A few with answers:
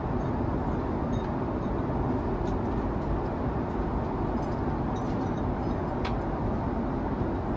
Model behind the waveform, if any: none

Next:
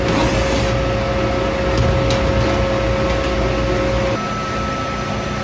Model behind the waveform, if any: none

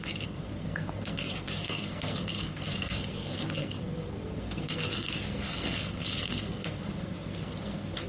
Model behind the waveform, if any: codec, SNAC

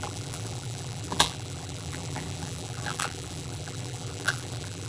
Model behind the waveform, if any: vocoder, BigVGAN v2